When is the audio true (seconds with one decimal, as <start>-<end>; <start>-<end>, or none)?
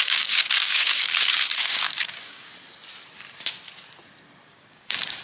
2.5-4.5